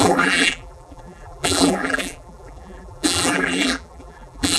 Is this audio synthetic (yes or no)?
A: yes